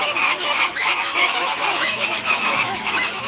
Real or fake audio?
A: fake